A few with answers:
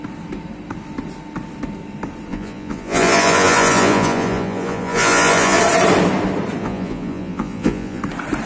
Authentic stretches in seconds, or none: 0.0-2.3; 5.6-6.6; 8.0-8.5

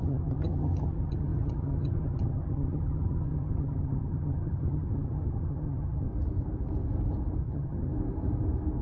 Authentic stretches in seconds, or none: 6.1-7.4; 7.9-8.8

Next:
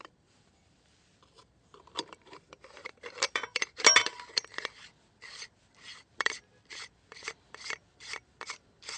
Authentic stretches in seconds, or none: none

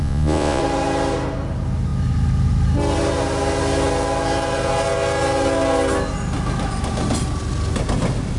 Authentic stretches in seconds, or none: 0.6-8.4

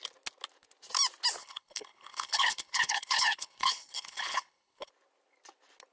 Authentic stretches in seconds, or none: 0.0-1.4; 4.9-5.9